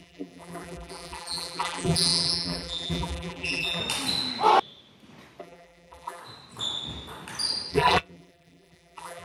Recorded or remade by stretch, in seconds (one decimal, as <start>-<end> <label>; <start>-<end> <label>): 0.0-3.8 remade; 3.8-5.4 recorded; 5.4-6.2 remade; 6.2-7.7 recorded; 7.7-9.2 remade